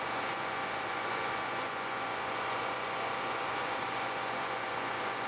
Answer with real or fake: fake